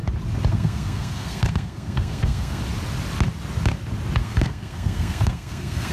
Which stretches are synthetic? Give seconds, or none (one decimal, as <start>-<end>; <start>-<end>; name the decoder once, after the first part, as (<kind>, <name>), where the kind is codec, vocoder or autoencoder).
0.5-2.6 (codec, SNAC); 4.2-5.9